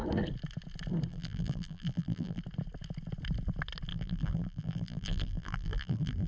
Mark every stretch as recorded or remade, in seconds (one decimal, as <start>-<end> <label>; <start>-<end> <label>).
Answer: 0.0-1.1 recorded; 1.1-2.4 remade; 2.4-3.9 recorded; 3.9-6.3 remade